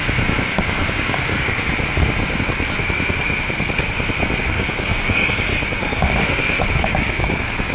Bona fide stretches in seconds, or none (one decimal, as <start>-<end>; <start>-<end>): 1.7-4.4; 5.5-6.1